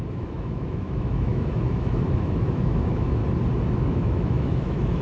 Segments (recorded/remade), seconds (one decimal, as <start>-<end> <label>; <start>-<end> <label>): 0.0-3.2 remade; 3.2-3.7 recorded; 3.7-5.0 remade